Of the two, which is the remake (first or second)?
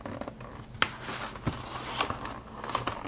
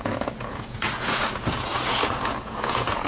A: second